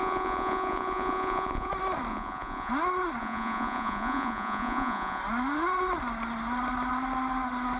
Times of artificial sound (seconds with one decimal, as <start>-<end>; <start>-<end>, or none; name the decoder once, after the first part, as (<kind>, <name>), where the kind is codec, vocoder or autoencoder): 0.0-1.7 (vocoder, Vocos); 2.1-2.7; 3.2-5.2